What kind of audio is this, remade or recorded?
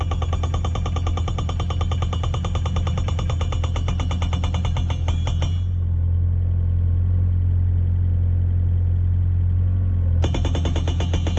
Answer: recorded